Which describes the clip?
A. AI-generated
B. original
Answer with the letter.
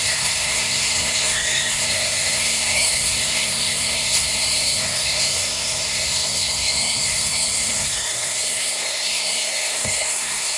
A